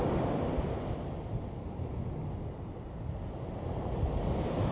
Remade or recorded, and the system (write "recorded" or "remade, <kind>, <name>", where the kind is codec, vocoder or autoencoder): recorded